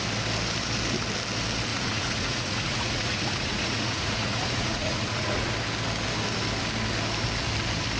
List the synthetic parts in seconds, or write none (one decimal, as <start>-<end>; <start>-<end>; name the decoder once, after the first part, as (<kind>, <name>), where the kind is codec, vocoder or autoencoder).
1.7-5.5 (vocoder, Vocos)